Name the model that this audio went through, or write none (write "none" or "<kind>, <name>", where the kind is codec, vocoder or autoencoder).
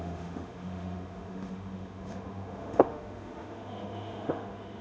autoencoder, DAC-VAE